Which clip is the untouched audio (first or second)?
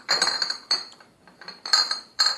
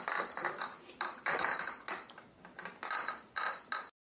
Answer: second